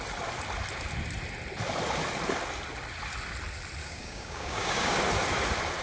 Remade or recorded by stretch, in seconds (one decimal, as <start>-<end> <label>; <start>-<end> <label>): 0.0-3.8 recorded; 3.8-5.0 remade; 5.0-5.8 recorded